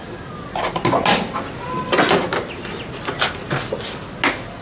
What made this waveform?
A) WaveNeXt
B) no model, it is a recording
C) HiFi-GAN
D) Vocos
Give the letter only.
B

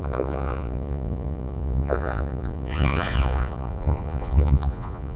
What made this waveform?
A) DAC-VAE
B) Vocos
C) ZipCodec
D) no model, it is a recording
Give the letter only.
B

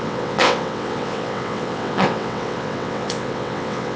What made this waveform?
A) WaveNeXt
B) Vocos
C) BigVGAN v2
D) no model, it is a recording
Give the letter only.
A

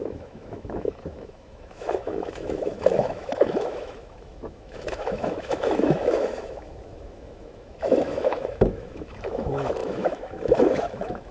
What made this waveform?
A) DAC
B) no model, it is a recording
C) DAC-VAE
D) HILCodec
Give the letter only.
C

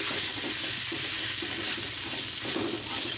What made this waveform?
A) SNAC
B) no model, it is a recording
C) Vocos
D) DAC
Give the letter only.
B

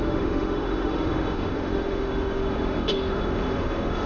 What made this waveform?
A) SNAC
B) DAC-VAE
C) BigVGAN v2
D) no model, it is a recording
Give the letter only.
B